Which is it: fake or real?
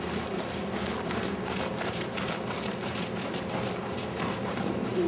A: real